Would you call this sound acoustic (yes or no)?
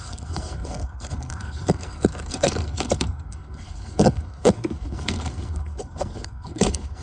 no